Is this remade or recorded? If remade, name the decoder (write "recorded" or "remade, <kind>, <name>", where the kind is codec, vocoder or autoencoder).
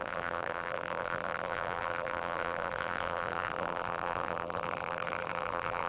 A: remade, vocoder, BigVGAN v2